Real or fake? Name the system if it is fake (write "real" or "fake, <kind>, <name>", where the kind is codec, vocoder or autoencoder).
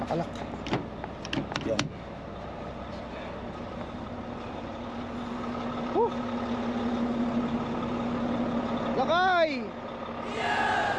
real